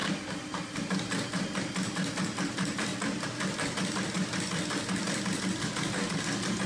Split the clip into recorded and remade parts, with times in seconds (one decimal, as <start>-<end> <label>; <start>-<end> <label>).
0.0-6.7 recorded